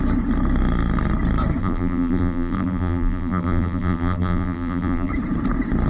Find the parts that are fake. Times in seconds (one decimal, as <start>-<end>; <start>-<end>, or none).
1.6-5.1